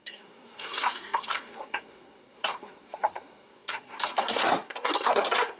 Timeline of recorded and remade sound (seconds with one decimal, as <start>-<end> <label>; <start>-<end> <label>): 0.0-5.6 remade